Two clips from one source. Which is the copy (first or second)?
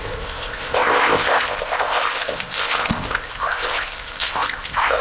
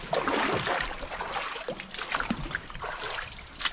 first